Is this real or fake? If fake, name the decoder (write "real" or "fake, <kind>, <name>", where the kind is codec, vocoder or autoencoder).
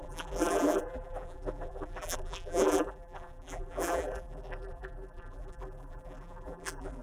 fake, vocoder, BigVGAN v2